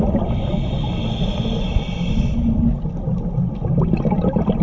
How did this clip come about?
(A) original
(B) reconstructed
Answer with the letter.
A